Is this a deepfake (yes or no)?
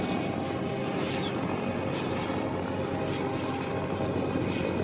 no